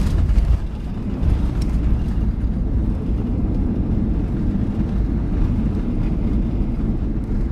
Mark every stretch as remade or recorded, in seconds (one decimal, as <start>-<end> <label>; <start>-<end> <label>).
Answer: 0.0-2.6 recorded; 2.6-3.6 remade; 3.6-7.5 recorded